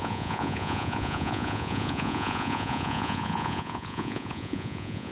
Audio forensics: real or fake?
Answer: fake